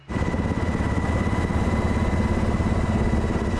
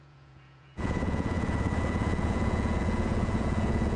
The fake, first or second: second